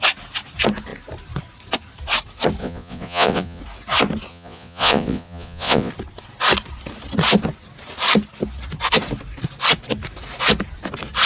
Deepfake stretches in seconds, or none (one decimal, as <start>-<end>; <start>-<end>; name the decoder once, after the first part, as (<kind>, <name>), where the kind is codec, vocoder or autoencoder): 2.6-3.6 (vocoder, Vocos); 4.3-5.9